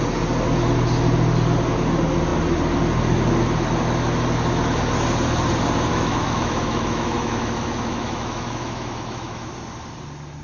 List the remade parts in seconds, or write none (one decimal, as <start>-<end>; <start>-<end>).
5.9-9.5